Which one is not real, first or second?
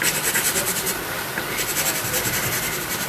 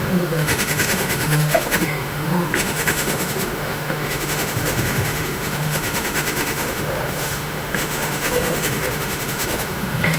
second